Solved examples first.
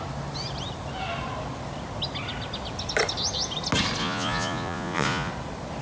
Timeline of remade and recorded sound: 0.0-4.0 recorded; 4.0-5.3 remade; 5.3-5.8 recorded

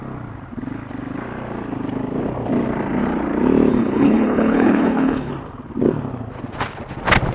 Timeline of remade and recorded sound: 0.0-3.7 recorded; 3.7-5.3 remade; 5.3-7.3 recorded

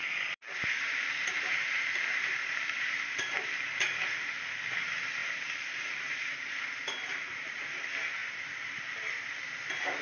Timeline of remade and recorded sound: 0.0-4.3 remade; 4.3-5.2 recorded; 5.2-7.6 remade; 7.6-10.0 recorded

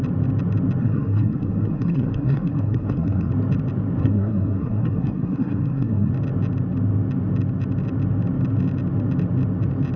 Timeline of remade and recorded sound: 0.0-0.8 recorded; 0.8-3.3 remade; 3.3-4.0 recorded; 4.0-6.1 remade; 6.1-10.0 recorded

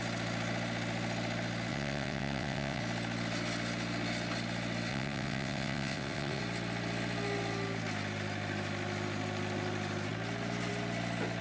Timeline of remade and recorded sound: 0.0-1.7 recorded; 1.7-2.8 remade; 2.8-4.9 recorded; 4.9-6.4 remade; 6.4-11.4 recorded

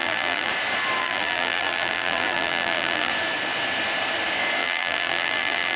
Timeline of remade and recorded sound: 0.0-0.5 remade; 0.5-1.0 recorded; 1.0-3.1 remade; 3.1-4.6 recorded; 4.6-5.8 remade